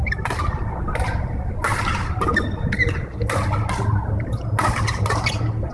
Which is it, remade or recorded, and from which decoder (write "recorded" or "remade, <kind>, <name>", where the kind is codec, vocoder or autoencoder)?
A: recorded